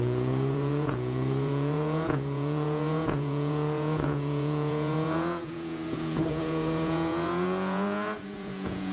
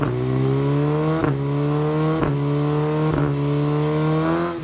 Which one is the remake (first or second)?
first